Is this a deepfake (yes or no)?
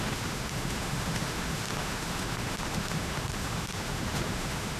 yes